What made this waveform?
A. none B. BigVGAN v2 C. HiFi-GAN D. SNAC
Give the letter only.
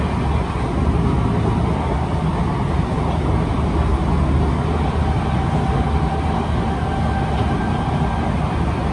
A